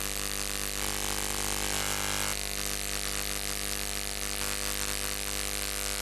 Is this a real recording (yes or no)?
yes